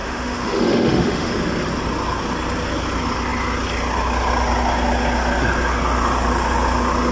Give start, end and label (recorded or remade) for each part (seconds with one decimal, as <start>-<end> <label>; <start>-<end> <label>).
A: 0.0-1.3 remade; 1.3-7.1 recorded